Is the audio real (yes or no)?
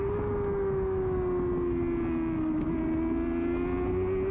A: yes